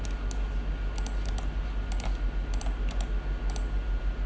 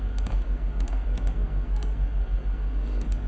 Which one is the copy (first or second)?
second